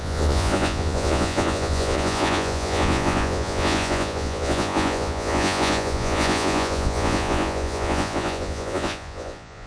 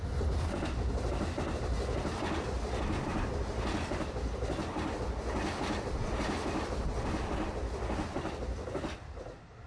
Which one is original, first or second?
second